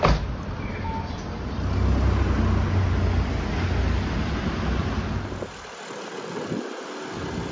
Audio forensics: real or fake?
real